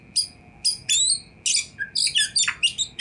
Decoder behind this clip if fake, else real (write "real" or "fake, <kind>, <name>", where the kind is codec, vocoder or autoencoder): real